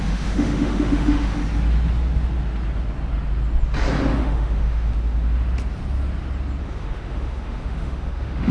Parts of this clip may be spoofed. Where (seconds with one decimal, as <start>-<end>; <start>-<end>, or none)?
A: 0.0-1.4; 4.2-4.9; 6.6-8.5